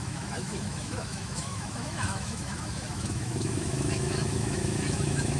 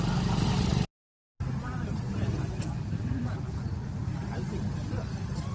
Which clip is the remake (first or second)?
first